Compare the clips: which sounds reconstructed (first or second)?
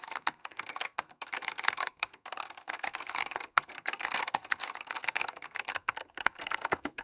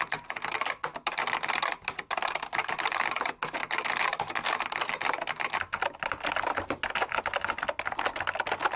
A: first